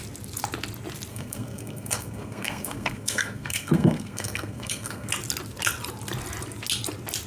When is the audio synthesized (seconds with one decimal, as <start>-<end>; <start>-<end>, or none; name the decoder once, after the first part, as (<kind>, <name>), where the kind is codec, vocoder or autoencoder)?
1.1-5.1 (codec, SNAC)